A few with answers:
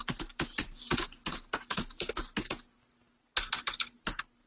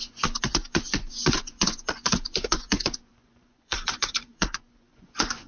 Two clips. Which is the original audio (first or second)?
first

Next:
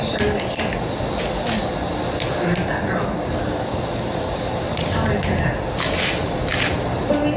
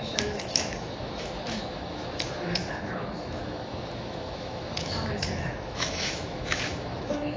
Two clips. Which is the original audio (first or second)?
first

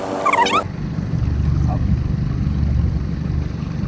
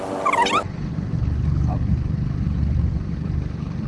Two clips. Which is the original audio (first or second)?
first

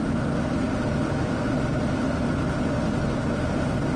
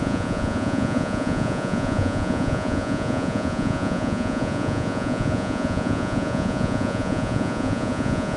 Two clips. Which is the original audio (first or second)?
first